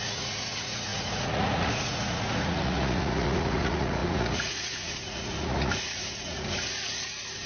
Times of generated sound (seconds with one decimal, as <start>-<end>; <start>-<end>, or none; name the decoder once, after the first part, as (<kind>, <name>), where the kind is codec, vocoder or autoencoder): 0.0-7.5 (vocoder, Vocos)